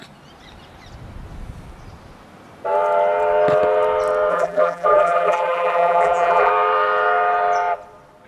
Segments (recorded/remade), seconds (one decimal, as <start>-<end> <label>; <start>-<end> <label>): 0.0-4.3 recorded; 4.3-6.5 remade; 6.5-8.3 recorded